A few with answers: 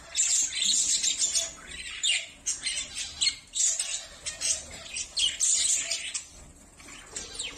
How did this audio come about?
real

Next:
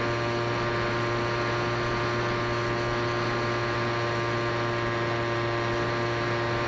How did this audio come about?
real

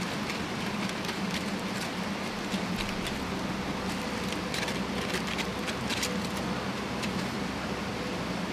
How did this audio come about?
real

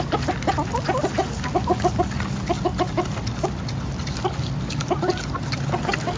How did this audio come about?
real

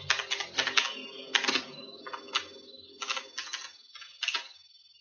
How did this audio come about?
real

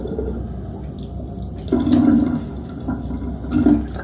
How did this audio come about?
real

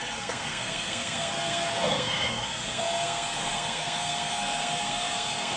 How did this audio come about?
fake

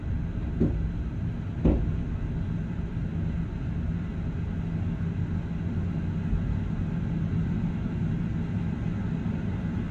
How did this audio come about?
real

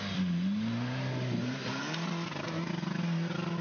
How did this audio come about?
real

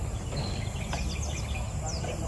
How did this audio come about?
real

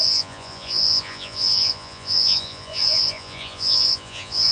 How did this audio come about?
fake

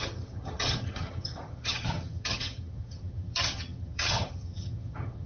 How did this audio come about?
fake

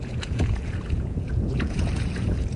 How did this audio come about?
fake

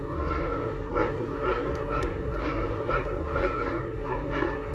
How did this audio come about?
fake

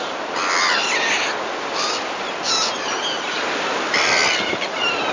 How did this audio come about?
fake